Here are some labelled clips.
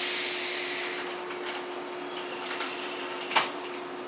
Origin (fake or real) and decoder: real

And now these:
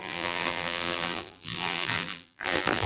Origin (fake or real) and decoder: fake, vocoder, BigVGAN v2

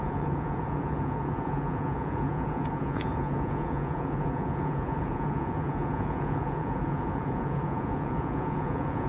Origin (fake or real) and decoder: fake, vocoder, Vocos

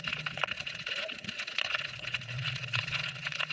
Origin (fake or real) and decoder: fake, vocoder, Vocos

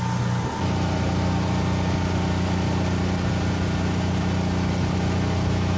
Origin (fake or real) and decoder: real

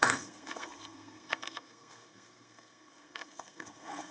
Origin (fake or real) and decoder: fake, codec, SNAC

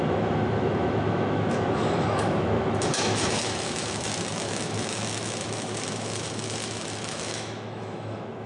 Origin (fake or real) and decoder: fake, autoencoder, DAC-VAE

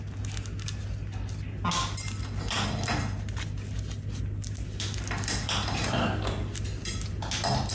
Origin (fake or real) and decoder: real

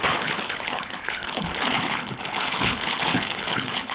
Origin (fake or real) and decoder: fake, codec, HILCodec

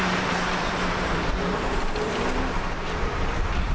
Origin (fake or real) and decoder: fake, vocoder, BigVGAN v2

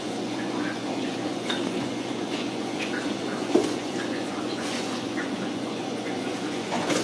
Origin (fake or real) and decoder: fake, vocoder, Vocos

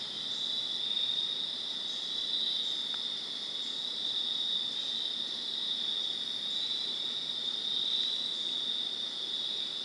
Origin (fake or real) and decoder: real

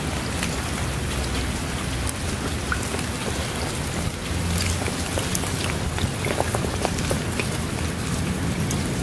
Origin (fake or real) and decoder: real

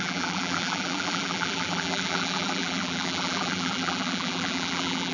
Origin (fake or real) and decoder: fake, vocoder, BigVGAN v2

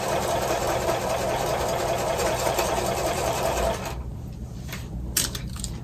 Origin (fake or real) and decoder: fake, vocoder, BigVGAN v2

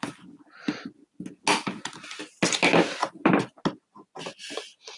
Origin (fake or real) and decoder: real